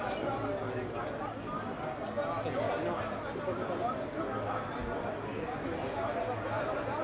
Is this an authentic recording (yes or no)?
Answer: yes